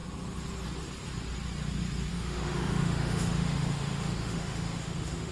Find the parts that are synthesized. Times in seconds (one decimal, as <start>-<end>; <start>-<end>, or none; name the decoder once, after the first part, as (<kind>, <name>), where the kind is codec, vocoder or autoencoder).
2.1-5.3 (autoencoder, DAC-VAE)